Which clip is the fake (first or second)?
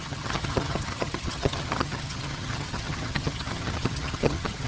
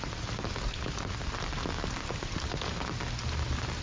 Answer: first